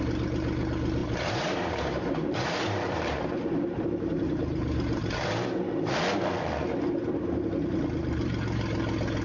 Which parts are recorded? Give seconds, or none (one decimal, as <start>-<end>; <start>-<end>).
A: 0.0-1.0; 5.9-9.2